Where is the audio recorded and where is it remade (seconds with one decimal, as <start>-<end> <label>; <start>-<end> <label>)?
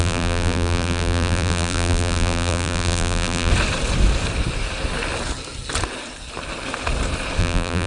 0.0-3.5 remade; 3.5-7.4 recorded; 7.4-7.9 remade